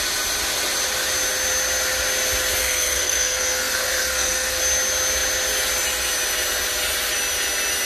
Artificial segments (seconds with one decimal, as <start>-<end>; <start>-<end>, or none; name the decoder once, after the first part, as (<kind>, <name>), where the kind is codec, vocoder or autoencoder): 2.6-4.6 (codec, SNAC)